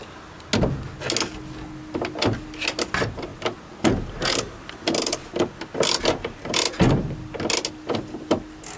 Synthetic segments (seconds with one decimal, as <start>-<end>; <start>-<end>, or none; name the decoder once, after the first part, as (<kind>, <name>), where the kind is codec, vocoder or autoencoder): none